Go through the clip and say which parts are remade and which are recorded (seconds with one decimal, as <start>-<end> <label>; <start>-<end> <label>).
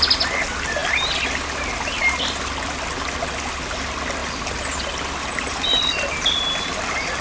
0.0-7.2 recorded